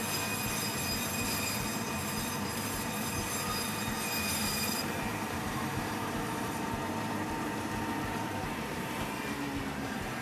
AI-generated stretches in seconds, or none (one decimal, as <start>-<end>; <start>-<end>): 4.2-9.1

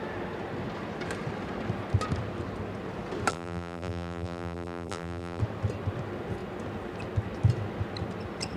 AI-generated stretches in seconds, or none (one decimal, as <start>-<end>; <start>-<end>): 3.3-5.4

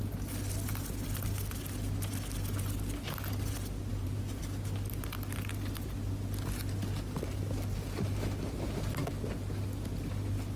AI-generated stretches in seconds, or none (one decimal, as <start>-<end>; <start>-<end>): 3.9-4.4

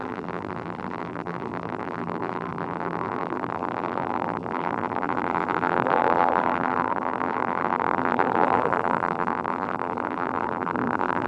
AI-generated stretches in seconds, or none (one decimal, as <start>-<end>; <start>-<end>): 0.0-11.3